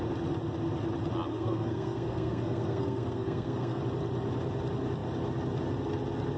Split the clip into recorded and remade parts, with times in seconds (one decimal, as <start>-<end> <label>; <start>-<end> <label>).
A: 0.0-1.3 recorded; 1.3-3.8 remade; 3.8-6.4 recorded